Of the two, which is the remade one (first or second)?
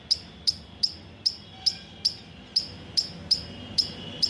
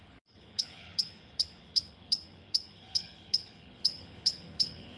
second